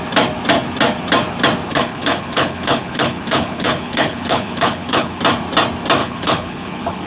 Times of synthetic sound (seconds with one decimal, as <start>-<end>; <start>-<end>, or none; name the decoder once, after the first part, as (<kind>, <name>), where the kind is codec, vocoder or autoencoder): 1.7-5.2 (codec, HILCodec); 6.0-7.1